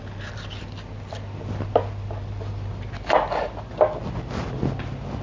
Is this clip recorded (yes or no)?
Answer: yes